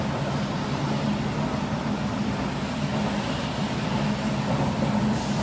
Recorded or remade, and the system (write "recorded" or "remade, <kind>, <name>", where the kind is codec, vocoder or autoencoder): recorded